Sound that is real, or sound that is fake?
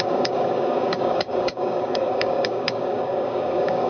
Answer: fake